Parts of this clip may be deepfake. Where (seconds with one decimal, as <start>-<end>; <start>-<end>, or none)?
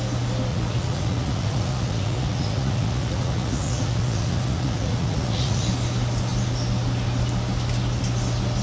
0.5-5.7